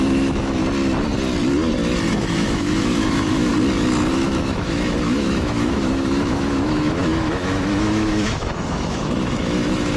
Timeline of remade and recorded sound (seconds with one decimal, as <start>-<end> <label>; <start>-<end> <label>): 0.0-0.6 remade; 0.6-2.1 recorded; 2.1-3.5 remade; 3.5-4.1 recorded; 4.1-10.0 remade